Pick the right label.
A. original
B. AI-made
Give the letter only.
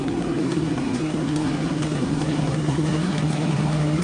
B